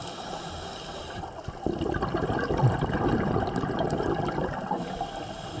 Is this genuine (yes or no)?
yes